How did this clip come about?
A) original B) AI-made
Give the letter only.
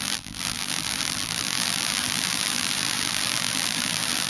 B